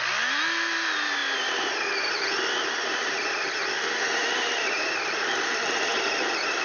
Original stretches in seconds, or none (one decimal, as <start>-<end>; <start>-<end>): 0.0-6.6